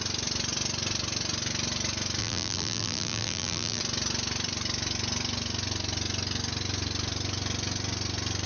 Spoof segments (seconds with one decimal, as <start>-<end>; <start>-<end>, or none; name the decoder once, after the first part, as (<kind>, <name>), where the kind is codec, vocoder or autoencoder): 2.2-3.8 (vocoder, BigVGAN v2)